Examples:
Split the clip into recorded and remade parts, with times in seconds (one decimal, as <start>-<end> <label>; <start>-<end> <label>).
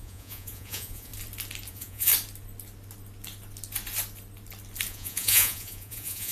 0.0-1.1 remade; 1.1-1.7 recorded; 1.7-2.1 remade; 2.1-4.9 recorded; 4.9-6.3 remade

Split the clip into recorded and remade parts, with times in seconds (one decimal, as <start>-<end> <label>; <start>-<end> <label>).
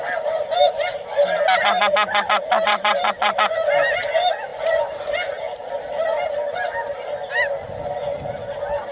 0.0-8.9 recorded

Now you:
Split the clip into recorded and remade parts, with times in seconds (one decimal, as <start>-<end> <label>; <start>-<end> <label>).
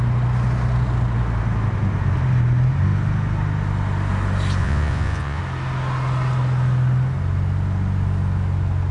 0.0-4.6 recorded; 4.6-5.4 remade; 5.4-8.9 recorded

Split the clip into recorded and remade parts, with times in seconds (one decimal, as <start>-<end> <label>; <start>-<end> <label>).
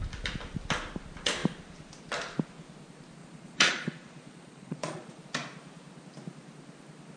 0.0-3.2 recorded; 3.2-5.2 remade; 5.2-7.2 recorded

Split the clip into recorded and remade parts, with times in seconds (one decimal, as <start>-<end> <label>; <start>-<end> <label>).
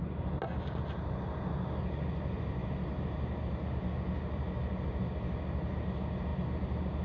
0.0-7.0 recorded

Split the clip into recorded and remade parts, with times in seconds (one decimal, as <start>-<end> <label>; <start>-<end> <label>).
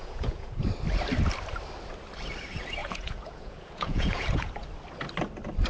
0.0-0.6 remade; 0.6-2.8 recorded; 2.8-4.5 remade; 4.5-5.7 recorded